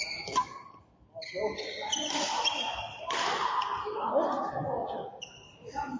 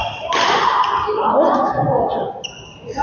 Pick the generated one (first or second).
first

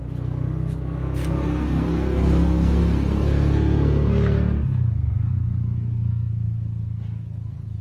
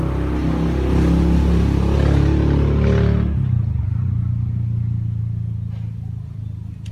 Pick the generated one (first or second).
first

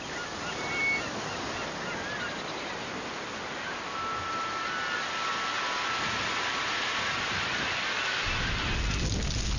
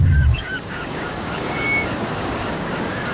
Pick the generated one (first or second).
second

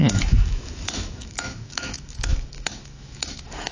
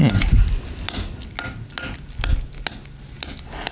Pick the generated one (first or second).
first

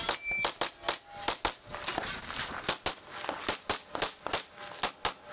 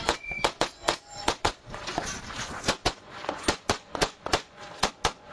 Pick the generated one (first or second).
second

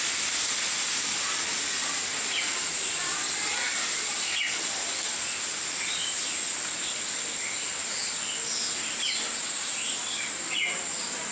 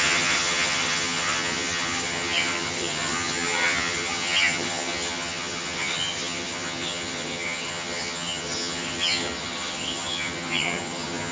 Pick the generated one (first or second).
second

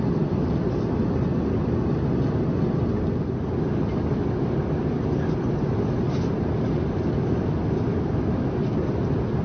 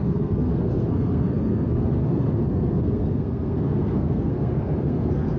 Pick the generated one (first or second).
second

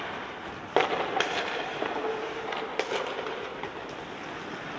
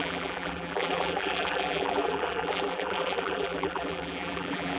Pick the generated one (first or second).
second